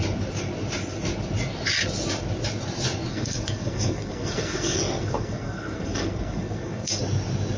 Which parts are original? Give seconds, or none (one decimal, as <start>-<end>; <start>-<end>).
0.0-3.1; 7.0-7.6

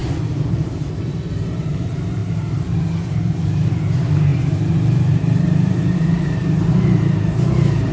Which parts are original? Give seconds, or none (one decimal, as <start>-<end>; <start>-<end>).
none

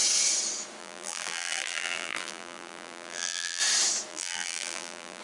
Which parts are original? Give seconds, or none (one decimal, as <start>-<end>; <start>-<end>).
0.0-0.8; 3.6-4.1

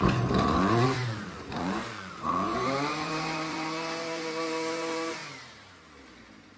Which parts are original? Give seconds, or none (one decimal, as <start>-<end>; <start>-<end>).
5.2-6.6